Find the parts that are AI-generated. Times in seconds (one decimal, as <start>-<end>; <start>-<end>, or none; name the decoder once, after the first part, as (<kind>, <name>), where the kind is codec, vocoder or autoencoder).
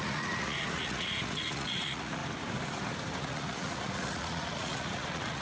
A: 0.0-2.2 (vocoder, Vocos); 3.2-5.4